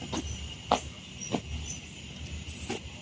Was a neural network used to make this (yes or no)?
no